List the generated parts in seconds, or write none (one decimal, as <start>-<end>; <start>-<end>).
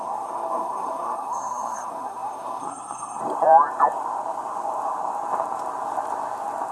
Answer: 0.0-3.2